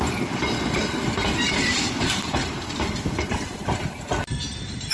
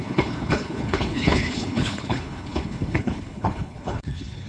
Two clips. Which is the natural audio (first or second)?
first